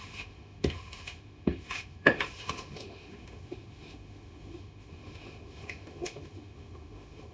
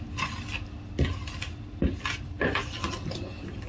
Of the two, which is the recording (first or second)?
second